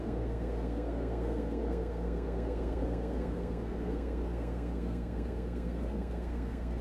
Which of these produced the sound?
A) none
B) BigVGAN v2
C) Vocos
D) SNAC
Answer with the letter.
D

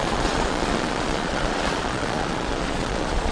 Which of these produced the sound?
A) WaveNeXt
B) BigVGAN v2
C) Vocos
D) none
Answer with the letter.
C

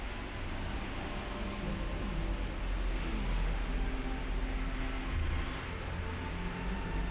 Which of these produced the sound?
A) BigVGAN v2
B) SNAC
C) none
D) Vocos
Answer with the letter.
C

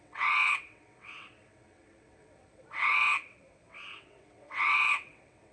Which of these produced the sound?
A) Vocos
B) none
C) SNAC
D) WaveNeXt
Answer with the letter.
D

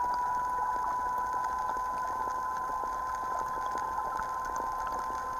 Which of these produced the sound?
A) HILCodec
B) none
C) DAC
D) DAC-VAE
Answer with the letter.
B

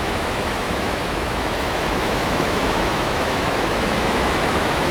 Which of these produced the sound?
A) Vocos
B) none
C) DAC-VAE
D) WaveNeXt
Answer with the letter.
C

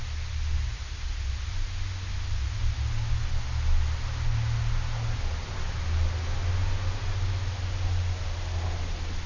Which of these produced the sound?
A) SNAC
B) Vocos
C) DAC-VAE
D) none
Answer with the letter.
D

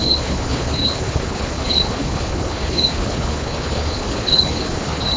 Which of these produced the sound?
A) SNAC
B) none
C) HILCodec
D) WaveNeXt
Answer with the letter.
C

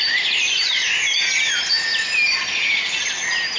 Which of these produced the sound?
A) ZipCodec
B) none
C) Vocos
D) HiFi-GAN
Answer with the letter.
B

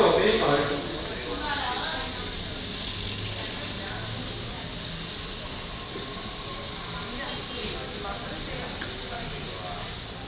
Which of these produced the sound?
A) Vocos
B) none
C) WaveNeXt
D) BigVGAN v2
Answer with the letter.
B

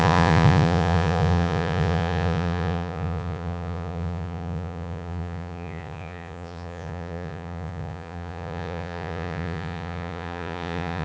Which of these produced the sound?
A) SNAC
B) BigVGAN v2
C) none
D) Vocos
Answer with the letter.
D